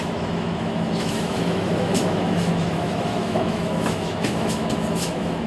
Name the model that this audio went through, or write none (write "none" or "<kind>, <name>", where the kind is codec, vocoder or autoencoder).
autoencoder, DAC-VAE